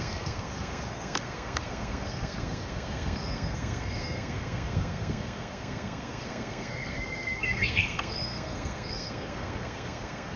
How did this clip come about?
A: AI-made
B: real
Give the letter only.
A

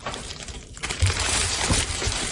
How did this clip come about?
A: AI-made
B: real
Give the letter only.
A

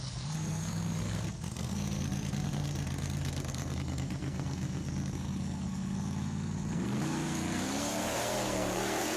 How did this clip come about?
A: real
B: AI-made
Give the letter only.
B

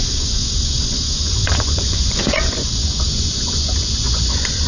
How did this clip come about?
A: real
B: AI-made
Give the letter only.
B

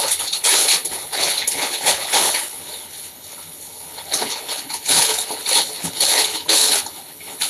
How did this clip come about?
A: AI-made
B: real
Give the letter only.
A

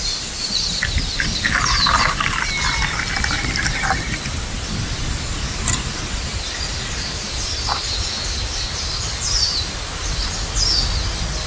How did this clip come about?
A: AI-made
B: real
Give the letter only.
B